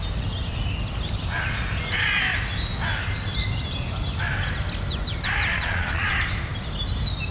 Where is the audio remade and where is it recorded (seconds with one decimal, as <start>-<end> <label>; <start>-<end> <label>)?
0.0-5.5 recorded; 5.5-6.1 remade; 6.1-7.3 recorded